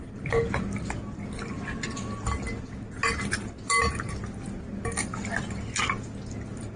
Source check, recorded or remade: recorded